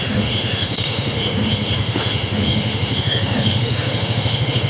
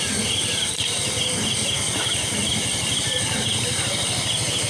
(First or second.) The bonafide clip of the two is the second